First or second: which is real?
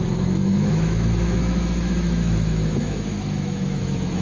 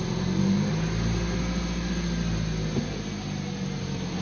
second